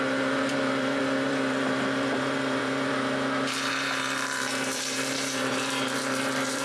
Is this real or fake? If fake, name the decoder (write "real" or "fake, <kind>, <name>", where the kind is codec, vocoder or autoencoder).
fake, vocoder, BigVGAN v2